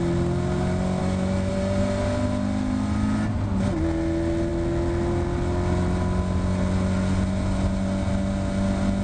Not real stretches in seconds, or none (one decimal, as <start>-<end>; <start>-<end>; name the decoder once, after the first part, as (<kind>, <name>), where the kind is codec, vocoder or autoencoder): 1.0-1.5 (autoencoder, DAC-VAE)